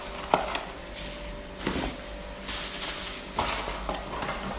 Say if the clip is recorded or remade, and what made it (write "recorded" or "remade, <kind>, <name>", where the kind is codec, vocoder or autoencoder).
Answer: recorded